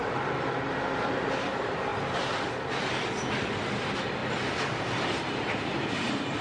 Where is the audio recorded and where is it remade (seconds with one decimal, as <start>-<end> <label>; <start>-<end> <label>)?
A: 0.0-6.4 recorded